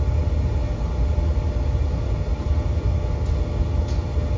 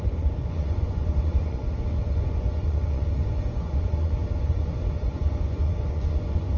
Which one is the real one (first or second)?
first